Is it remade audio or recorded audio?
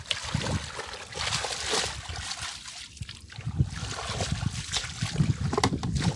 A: recorded